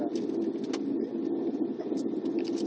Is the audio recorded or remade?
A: recorded